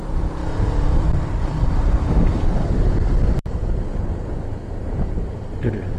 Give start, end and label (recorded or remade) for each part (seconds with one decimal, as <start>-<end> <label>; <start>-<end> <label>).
0.0-0.4 recorded; 0.4-4.0 remade; 4.0-6.0 recorded